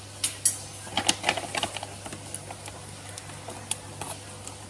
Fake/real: real